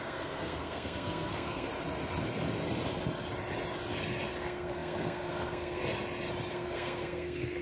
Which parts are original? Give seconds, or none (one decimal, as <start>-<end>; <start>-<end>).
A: 1.7-4.3; 5.8-6.5